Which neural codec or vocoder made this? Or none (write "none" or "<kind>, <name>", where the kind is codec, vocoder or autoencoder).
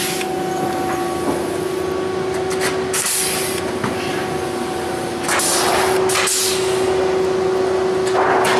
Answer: none